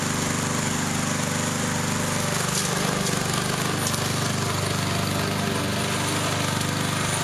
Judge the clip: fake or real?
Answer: real